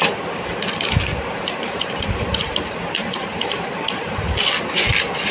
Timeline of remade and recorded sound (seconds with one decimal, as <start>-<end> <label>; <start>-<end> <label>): 0.0-1.1 recorded; 1.1-4.2 remade; 4.2-5.3 recorded